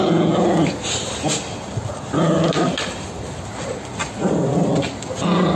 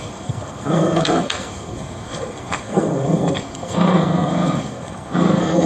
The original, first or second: first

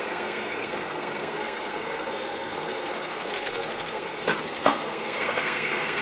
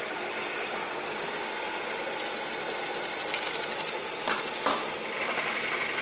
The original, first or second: second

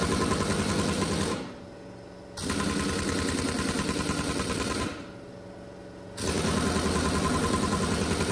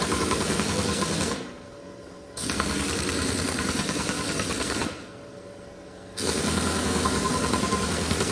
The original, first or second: first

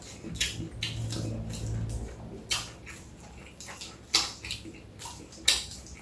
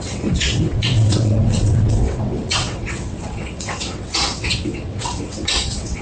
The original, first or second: first